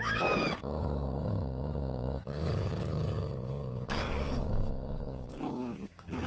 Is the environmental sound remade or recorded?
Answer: remade